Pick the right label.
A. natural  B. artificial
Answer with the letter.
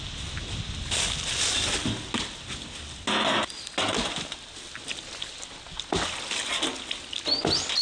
A